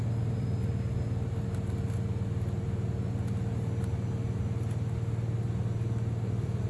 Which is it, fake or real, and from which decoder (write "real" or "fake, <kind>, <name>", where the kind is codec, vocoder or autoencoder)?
real